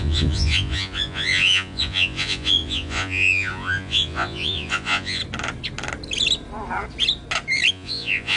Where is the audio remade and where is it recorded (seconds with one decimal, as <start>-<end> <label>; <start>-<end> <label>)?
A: 0.0-5.2 remade; 5.2-7.7 recorded; 7.7-8.4 remade